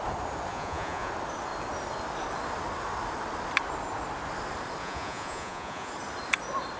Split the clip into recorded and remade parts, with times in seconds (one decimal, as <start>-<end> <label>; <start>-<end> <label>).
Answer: 0.0-0.5 recorded; 0.5-1.1 remade; 1.1-4.8 recorded; 4.8-5.9 remade; 5.9-6.8 recorded